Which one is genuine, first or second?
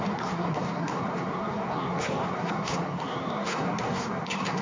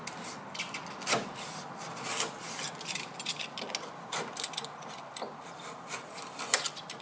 second